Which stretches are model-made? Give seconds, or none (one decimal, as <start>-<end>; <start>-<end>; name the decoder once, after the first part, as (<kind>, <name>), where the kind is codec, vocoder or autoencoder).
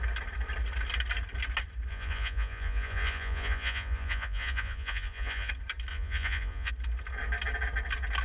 1.9-5.5 (vocoder, Vocos); 5.9-6.7